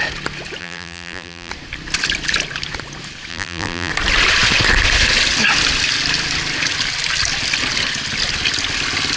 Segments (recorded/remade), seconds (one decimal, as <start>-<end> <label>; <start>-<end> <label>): 0.0-0.6 recorded; 0.6-1.5 remade; 1.5-3.3 recorded; 3.3-3.9 remade; 3.9-9.2 recorded